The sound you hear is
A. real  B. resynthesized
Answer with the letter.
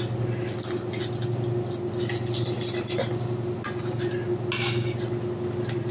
A